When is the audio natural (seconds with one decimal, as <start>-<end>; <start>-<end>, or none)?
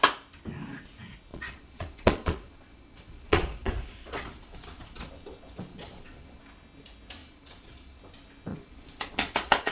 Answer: 0.0-1.3; 5.1-5.7; 6.4-7.2; 8.0-8.5